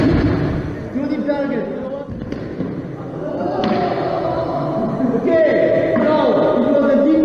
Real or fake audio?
real